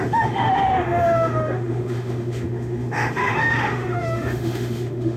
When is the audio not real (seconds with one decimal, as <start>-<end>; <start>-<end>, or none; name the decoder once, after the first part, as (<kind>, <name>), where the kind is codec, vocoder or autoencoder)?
0.0-5.2 (autoencoder, DAC-VAE)